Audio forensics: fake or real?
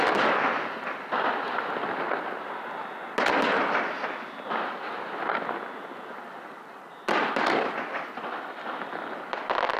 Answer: real